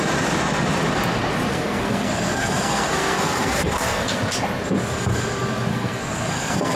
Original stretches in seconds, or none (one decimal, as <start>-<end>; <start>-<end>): 0.0-1.5; 4.2-5.7